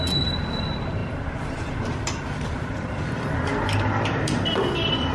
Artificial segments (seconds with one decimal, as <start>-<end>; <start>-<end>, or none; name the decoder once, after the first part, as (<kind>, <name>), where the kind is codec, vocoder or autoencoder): none

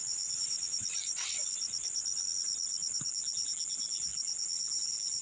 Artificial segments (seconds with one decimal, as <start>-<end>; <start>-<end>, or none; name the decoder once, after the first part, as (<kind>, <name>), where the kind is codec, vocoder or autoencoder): 3.1-5.2 (vocoder, BigVGAN v2)

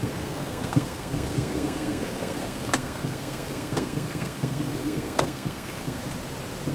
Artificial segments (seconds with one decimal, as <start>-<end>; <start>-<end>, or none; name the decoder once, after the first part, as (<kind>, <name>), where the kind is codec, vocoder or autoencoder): 0.0-6.0 (codec, SNAC)

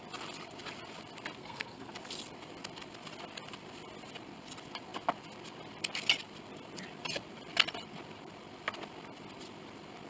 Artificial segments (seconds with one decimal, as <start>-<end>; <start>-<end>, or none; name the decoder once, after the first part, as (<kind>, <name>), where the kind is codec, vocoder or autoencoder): 1.4-1.9 (codec, SNAC)